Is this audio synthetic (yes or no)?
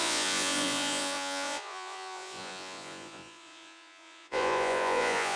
yes